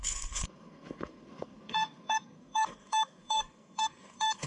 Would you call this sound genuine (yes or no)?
no